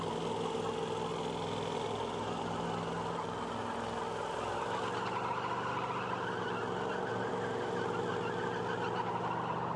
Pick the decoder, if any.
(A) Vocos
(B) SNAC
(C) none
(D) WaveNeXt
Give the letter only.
C